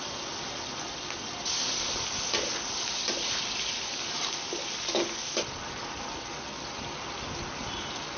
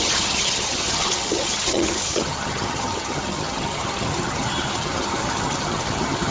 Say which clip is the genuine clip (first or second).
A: first